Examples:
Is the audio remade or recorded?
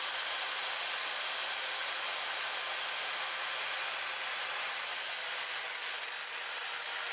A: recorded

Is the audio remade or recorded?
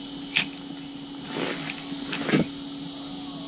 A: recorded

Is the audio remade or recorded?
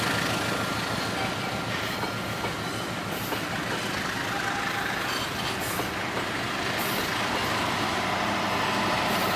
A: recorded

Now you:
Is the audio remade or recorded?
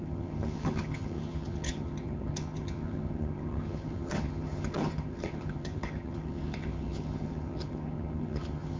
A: remade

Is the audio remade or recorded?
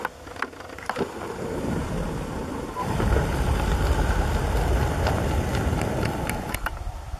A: recorded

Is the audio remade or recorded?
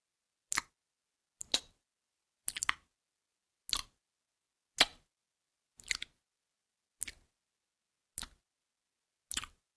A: recorded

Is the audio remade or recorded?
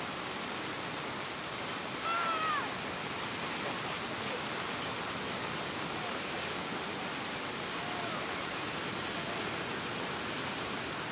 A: recorded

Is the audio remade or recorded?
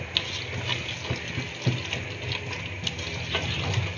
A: recorded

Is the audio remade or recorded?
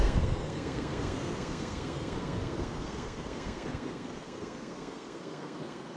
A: remade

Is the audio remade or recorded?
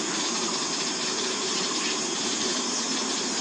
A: remade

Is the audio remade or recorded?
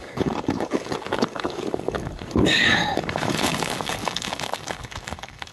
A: remade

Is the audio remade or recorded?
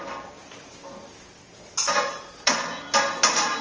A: recorded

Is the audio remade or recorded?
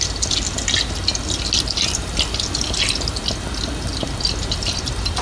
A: recorded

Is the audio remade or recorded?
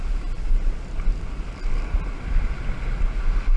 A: recorded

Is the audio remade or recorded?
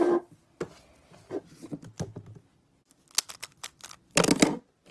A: recorded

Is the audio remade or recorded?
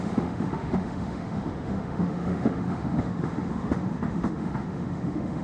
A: remade